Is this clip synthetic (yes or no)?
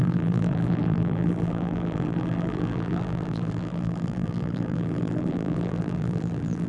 yes